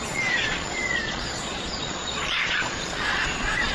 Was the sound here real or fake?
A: fake